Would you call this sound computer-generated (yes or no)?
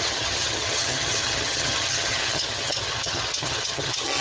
yes